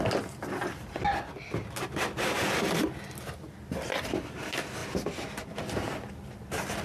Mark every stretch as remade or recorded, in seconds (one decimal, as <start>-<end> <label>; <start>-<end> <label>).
0.0-6.8 recorded